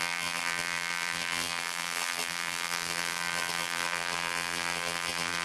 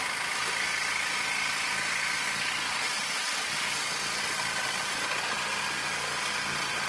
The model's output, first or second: first